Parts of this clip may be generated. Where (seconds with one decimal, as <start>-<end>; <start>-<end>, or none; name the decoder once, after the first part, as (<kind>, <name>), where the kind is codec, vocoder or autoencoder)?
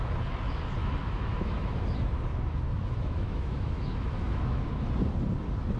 0.8-1.8 (autoencoder, DAC-VAE); 2.3-4.6